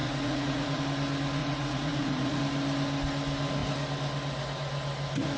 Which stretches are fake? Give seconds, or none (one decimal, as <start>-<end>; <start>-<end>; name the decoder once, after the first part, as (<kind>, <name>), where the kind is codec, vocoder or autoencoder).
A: 0.0-0.8 (vocoder, Vocos); 1.4-2.4